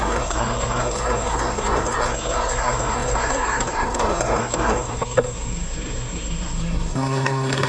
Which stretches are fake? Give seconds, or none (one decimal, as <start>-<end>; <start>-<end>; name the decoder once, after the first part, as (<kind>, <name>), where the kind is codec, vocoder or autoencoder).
0.0-7.7 (codec, SNAC)